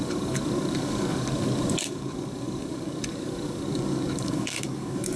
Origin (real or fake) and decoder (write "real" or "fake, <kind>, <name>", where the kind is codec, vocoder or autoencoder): fake, codec, DAC